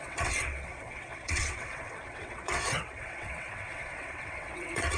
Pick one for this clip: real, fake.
fake